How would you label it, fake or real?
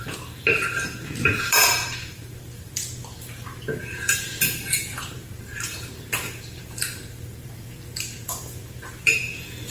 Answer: fake